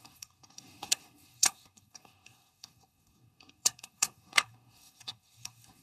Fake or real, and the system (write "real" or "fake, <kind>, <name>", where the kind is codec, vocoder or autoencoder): fake, codec, SNAC